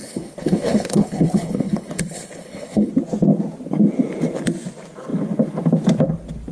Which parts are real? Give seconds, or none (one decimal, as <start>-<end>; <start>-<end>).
2.9-6.5